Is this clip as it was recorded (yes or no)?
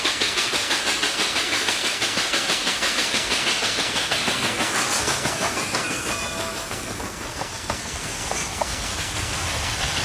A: no